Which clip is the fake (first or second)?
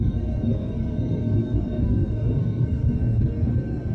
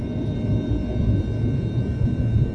first